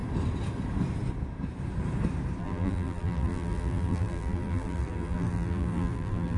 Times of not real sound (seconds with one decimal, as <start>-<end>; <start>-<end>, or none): 2.4-6.4